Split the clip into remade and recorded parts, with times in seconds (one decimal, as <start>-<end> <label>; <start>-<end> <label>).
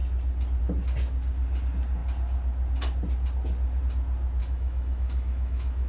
0.0-4.4 recorded; 4.4-5.9 remade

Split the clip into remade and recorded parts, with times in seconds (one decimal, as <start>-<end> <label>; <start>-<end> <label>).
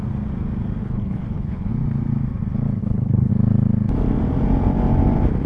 0.0-0.8 recorded; 0.8-1.7 remade; 1.7-2.8 recorded; 2.8-3.3 remade; 3.3-5.5 recorded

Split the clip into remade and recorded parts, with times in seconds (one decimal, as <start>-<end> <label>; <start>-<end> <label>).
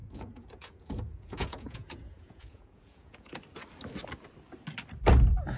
0.0-3.4 remade; 3.4-5.6 recorded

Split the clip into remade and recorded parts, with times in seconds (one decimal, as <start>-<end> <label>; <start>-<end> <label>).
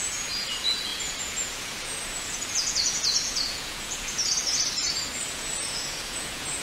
0.0-4.4 remade; 4.4-5.2 recorded; 5.2-6.6 remade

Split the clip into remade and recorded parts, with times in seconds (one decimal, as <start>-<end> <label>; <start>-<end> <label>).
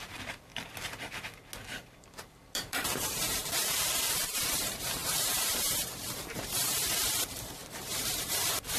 0.0-0.5 remade; 0.5-2.0 recorded; 2.0-8.8 remade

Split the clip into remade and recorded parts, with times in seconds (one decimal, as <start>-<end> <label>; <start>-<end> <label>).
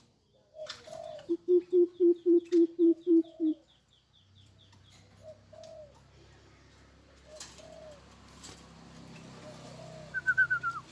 0.0-0.6 recorded; 0.6-1.3 remade; 1.3-1.9 recorded; 1.9-4.8 remade; 4.8-10.9 recorded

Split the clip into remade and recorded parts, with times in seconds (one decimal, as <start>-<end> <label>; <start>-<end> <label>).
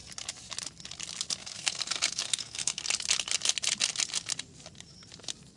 0.0-1.4 recorded; 1.4-2.8 remade; 2.8-5.6 recorded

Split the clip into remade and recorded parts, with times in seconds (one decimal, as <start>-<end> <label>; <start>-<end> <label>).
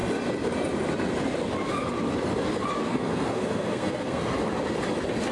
0.0-2.8 recorded; 2.8-4.2 remade; 4.2-5.3 recorded